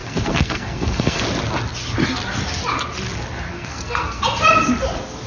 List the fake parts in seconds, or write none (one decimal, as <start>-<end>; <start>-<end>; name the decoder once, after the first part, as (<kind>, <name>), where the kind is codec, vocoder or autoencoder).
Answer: 0.0-1.2 (codec, SNAC); 3.5-4.2

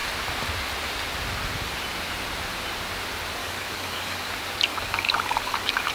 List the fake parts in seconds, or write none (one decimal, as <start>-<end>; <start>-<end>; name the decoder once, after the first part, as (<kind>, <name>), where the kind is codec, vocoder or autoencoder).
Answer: 3.4-4.3 (codec, DAC); 4.7-5.9

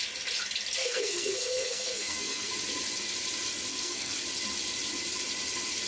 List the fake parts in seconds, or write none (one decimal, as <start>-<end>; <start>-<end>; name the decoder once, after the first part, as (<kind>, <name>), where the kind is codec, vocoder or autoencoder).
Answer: 0.8-2.5 (codec, SNAC); 3.7-4.2

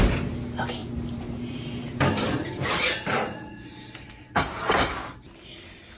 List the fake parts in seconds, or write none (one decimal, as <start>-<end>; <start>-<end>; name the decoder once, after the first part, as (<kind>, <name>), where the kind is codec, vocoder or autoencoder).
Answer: 0.8-4.4 (vocoder, BigVGAN v2)

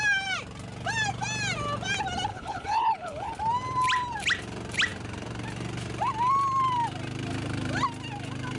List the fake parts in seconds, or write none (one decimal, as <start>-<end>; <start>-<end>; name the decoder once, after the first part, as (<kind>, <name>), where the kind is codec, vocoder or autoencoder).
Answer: 2.3-3.3 (codec, HILCodec)

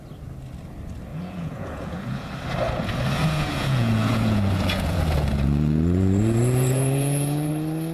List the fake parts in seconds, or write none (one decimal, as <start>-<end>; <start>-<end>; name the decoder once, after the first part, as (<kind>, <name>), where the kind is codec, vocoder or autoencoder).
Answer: 1.1-2.3 (vocoder, Vocos); 3.2-7.5

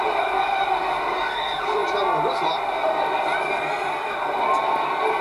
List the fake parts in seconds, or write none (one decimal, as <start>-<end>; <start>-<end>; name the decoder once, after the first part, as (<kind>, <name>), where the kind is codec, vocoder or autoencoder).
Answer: none